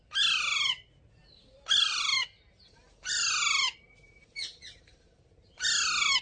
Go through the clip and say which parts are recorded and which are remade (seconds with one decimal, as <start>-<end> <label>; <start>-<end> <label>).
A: 0.0-6.2 recorded